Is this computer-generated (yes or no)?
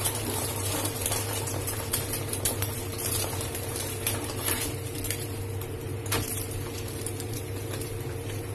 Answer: yes